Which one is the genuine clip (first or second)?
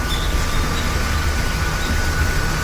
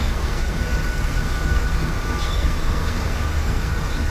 first